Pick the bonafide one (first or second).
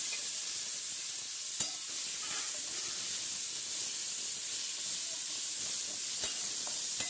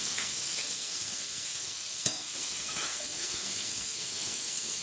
first